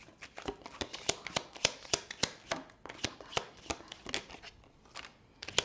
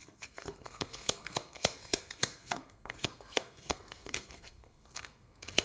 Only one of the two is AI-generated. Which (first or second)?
second